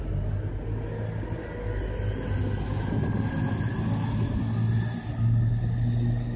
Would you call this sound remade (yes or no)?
no